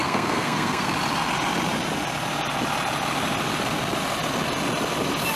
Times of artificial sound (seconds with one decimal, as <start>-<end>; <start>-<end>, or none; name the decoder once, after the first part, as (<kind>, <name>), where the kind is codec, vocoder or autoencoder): 0.0-0.9 (codec, SNAC)